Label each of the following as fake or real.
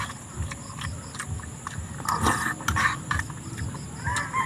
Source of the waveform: real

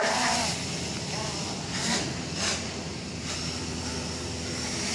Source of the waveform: real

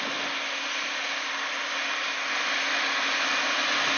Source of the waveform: real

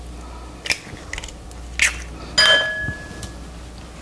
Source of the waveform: real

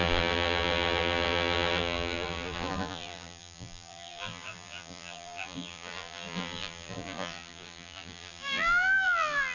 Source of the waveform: fake